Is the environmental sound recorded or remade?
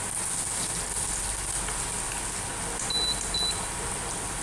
recorded